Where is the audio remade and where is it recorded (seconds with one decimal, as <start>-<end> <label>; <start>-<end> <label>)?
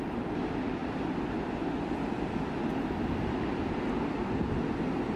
0.0-5.2 recorded